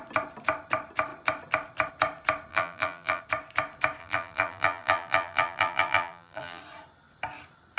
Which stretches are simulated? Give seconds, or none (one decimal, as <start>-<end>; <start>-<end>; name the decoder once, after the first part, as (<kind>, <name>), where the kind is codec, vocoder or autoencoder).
2.5-3.2 (vocoder, BigVGAN v2); 4.0-6.6